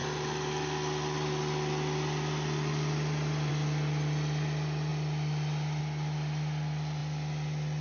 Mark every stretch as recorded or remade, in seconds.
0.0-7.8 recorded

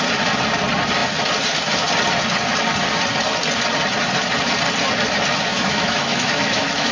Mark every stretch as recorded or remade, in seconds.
0.0-5.5 recorded; 5.5-6.9 remade

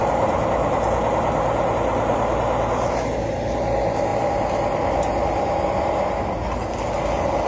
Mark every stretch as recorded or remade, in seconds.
0.0-4.1 recorded; 4.1-5.8 remade; 5.8-7.5 recorded